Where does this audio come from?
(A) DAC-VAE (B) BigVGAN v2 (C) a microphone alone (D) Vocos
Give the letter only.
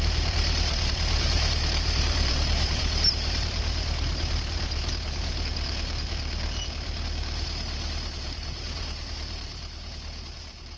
B